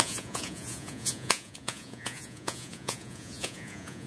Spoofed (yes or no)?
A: yes